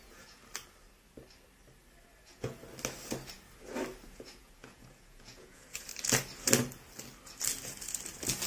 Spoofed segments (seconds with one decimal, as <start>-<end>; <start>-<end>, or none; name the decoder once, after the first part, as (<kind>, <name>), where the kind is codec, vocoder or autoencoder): 0.0-0.4 (vocoder, Vocos); 2.2-2.6; 4.1-5.9